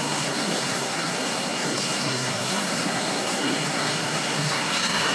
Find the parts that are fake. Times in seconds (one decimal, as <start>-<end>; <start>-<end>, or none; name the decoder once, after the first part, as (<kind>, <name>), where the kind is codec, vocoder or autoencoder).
0.0-5.1 (codec, SNAC)